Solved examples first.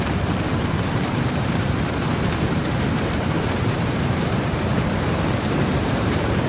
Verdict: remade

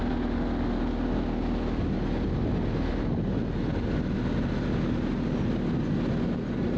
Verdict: recorded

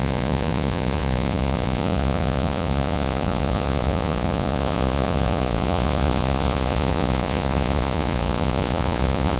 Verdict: remade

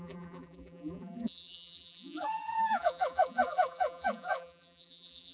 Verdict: remade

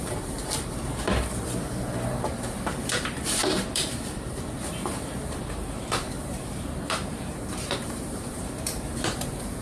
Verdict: remade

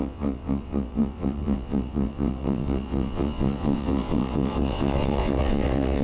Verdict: remade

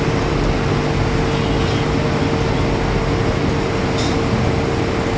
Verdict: recorded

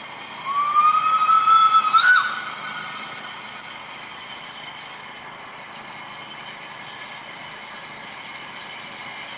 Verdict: recorded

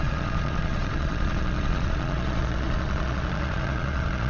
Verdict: remade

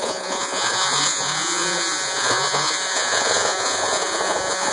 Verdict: remade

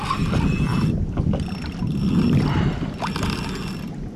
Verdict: recorded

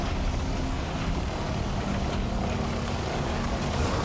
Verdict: remade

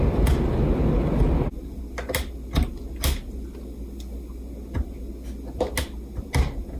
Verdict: recorded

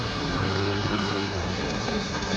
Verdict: remade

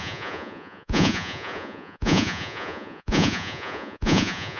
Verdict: remade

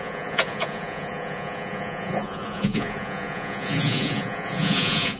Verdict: remade